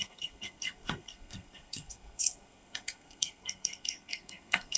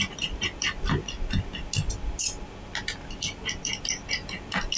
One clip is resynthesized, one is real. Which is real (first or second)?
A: second